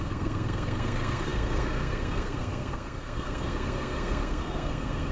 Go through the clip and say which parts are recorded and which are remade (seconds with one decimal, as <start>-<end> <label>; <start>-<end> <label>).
0.0-5.1 remade